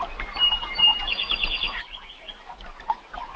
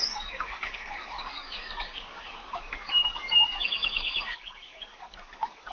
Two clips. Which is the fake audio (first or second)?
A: second